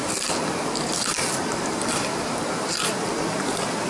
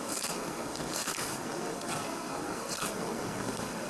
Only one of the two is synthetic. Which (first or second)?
second